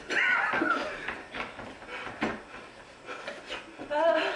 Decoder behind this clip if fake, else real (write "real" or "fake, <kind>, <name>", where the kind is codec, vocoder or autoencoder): real